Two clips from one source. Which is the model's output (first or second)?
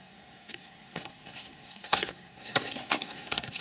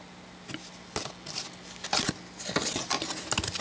first